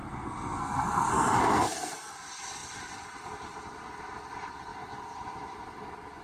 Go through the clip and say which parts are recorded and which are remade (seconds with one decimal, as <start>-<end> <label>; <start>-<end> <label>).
0.0-2.1 remade; 2.1-6.2 recorded